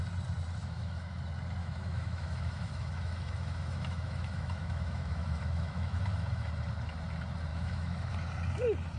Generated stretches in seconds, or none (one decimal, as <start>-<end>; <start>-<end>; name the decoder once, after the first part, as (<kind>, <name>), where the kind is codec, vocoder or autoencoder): 0.6-1.2 (autoencoder, DAC-VAE); 1.6-6.5; 7.5-8.1